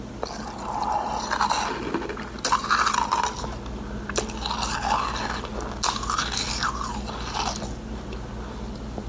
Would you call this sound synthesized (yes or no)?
no